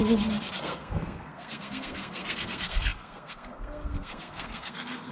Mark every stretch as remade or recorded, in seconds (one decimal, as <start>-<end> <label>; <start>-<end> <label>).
0.0-0.6 recorded; 0.6-5.1 remade